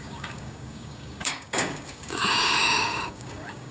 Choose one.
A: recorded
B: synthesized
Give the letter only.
B